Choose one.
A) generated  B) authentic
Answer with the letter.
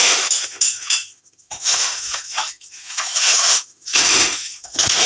A